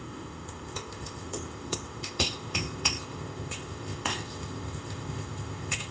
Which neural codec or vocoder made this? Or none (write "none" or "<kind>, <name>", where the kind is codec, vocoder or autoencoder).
codec, ZipCodec